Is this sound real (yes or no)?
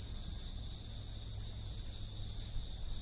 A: yes